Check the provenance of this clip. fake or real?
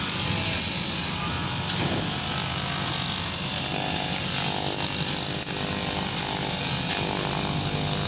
real